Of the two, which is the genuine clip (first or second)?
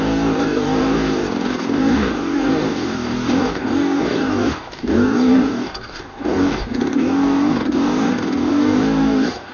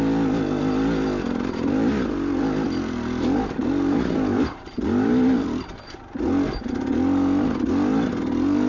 second